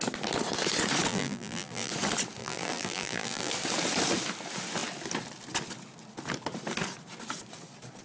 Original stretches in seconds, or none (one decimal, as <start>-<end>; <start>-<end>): 0.0-1.1; 1.9-2.4; 3.5-8.0